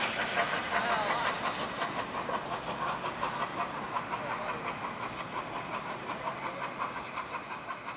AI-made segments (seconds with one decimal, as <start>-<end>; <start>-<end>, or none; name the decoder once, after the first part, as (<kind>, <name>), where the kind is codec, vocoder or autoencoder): none